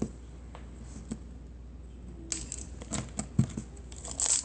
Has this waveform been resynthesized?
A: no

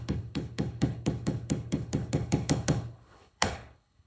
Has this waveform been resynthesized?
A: yes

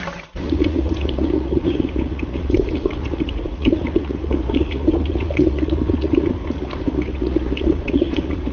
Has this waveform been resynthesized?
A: yes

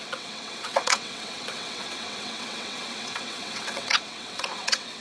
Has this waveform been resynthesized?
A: yes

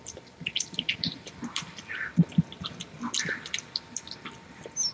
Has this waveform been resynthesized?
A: no